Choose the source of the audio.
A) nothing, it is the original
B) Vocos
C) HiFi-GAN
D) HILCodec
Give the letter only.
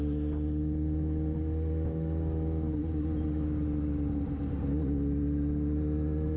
A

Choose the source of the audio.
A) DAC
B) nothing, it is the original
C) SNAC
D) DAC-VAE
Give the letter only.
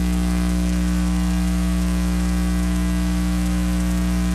D